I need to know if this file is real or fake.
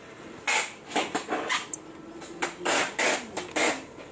real